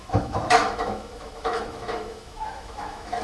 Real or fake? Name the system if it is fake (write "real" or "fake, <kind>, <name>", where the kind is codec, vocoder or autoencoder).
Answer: fake, autoencoder, DAC-VAE